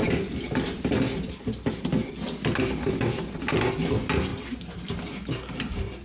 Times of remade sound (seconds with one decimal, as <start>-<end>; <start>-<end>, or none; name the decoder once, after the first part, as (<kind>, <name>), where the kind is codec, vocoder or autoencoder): 4.3-4.9 (vocoder, BigVGAN v2)